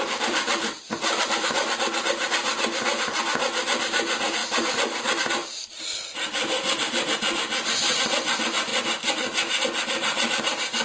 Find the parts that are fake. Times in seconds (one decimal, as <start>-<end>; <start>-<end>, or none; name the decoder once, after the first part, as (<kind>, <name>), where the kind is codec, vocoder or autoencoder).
0.0-2.4 (vocoder, BigVGAN v2); 3.8-4.4; 5.3-8.7; 9.6-10.8